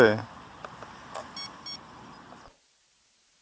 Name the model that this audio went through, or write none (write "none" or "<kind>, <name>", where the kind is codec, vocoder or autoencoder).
none